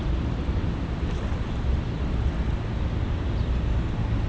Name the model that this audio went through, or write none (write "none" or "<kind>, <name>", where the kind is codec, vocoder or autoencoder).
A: none